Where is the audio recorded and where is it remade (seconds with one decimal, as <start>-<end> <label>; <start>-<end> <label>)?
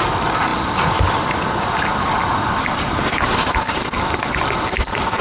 0.0-5.2 recorded